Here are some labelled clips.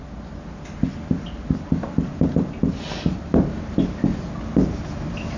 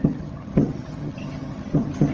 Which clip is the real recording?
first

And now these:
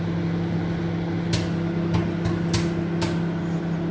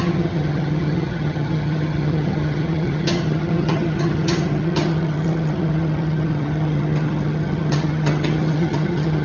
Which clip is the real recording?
first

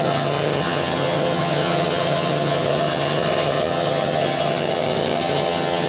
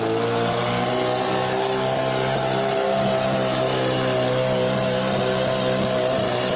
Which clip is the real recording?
second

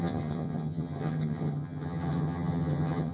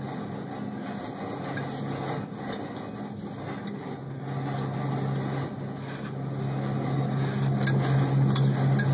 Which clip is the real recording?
second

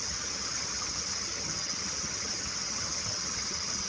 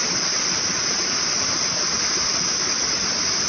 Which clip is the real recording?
second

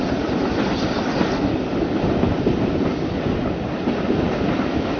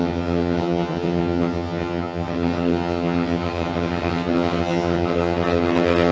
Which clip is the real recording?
first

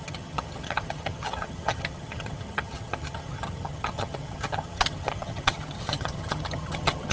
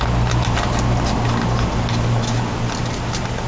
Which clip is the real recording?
second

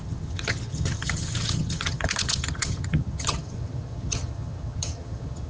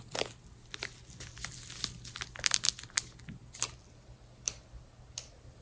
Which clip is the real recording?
second